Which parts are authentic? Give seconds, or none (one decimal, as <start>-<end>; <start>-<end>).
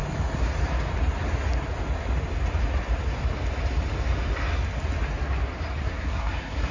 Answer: 0.0-5.8